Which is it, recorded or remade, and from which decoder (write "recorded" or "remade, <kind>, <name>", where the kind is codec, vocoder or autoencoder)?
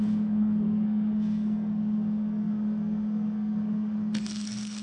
remade, codec, SNAC